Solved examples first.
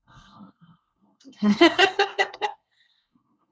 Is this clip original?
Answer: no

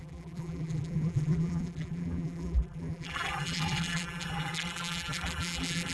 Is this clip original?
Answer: no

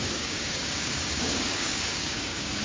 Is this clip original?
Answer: no